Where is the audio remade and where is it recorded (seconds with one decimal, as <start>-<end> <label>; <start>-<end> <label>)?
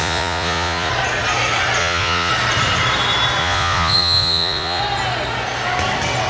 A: 0.0-0.9 remade; 0.9-1.8 recorded; 1.8-2.3 remade; 2.3-3.4 recorded; 3.4-4.8 remade; 4.8-6.3 recorded